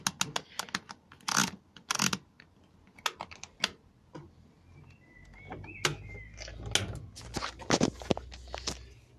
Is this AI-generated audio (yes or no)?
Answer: no